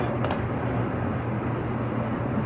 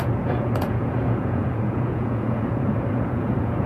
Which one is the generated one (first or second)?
second